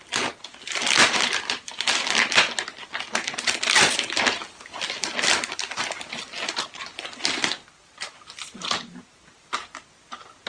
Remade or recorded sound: recorded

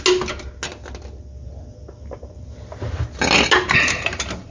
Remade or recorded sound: recorded